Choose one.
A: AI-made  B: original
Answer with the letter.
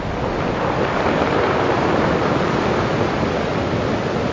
B